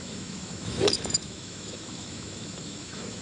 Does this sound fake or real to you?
fake